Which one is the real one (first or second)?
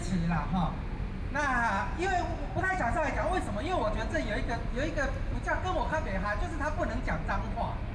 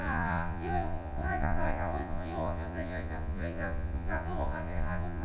first